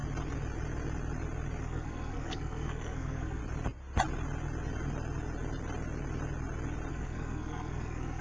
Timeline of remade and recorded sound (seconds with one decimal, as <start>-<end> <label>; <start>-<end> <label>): 0.0-1.6 recorded; 1.6-3.4 remade; 3.4-6.9 recorded; 6.9-8.2 remade